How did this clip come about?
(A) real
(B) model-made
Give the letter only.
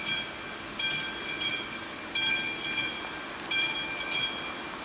A